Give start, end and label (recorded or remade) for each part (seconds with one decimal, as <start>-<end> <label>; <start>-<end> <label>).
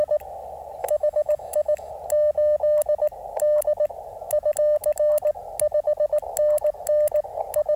0.0-0.8 recorded; 0.8-1.9 remade; 1.9-7.8 recorded